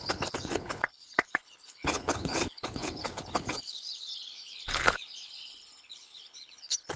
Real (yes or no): no